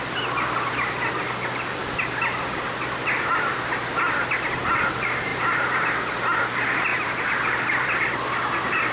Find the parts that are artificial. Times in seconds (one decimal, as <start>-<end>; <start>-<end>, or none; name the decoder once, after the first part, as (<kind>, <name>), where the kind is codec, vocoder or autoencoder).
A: 6.9-7.4 (vocoder, BigVGAN v2)